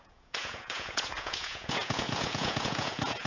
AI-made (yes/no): yes